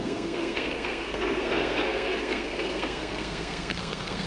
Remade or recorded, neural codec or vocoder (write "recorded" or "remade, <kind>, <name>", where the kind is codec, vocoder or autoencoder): remade, codec, SNAC